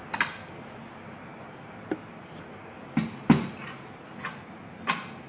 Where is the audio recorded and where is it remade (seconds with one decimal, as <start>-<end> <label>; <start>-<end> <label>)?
0.0-5.3 recorded